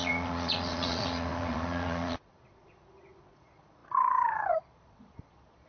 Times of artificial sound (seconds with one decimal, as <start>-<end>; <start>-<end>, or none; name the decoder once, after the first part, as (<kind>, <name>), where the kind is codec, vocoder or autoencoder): 0.0-5.7 (vocoder, Vocos)

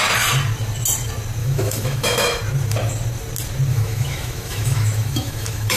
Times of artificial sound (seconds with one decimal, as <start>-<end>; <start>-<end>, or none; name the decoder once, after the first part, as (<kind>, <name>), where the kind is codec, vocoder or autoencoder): 1.4-2.4 (autoencoder, DAC-VAE); 3.7-5.8

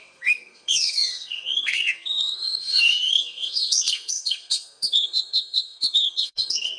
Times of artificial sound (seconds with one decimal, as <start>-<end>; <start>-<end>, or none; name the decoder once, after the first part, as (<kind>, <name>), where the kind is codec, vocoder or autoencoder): 0.0-6.8 (codec, SNAC)

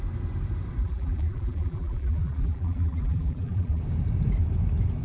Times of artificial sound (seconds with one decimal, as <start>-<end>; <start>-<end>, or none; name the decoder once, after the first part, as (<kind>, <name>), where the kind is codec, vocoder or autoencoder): 0.8-3.8 (vocoder, BigVGAN v2)

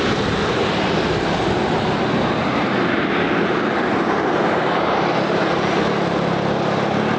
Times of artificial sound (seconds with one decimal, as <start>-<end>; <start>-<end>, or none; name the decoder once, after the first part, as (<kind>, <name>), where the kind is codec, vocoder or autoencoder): 2.4-5.9 (vocoder, BigVGAN v2)

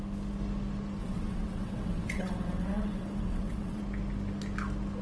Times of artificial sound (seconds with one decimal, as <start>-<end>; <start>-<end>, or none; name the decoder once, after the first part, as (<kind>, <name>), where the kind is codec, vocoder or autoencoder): 1.0-3.8 (vocoder, WaveNeXt)

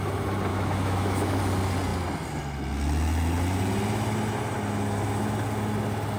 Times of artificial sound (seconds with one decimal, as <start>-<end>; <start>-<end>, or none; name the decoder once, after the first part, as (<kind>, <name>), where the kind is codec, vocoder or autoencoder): 0.5-1.4 (autoencoder, DAC-VAE)

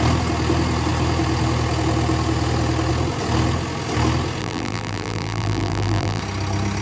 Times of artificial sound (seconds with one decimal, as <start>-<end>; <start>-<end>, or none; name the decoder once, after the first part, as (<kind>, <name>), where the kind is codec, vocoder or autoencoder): 4.4-6.2 (vocoder, BigVGAN v2)